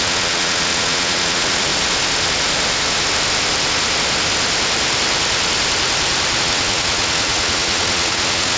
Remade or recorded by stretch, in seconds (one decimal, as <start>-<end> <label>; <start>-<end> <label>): 0.0-1.7 remade; 1.7-6.4 recorded; 6.4-8.6 remade